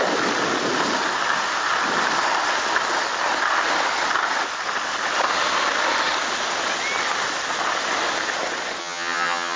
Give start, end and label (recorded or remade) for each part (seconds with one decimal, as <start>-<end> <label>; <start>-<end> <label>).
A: 0.0-8.8 recorded; 8.8-9.6 remade